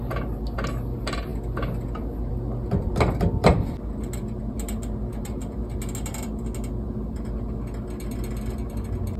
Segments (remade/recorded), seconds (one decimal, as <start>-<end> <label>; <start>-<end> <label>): 0.0-9.2 recorded